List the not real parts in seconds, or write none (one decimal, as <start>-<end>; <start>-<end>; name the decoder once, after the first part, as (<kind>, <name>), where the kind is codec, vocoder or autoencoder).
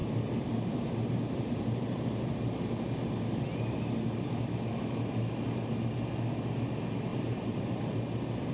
0.0-2.0 (vocoder, BigVGAN v2); 7.1-7.8